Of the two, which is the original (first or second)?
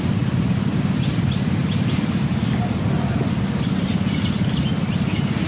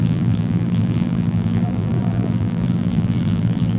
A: first